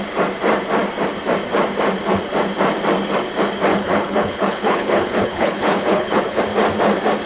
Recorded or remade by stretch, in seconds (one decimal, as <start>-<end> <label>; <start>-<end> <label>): 0.0-3.7 recorded; 3.7-6.4 remade; 6.4-7.3 recorded